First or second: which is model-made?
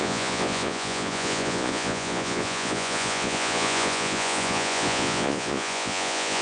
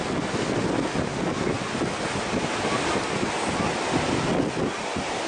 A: first